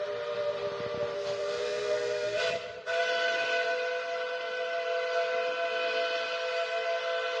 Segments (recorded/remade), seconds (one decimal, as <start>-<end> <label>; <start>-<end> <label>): 0.0-1.4 recorded; 1.4-2.4 remade; 2.4-7.4 recorded